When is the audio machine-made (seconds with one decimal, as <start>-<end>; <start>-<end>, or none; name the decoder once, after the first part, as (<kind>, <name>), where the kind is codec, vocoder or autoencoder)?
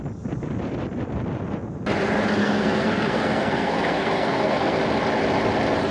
2.4-4.8 (codec, SNAC)